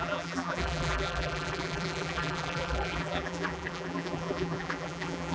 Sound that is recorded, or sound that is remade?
remade